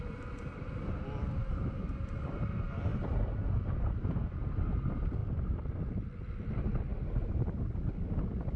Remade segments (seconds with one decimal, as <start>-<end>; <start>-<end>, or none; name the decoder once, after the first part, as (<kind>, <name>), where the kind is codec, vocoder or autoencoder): 2.9-4.3 (vocoder, BigVGAN v2); 6.9-7.5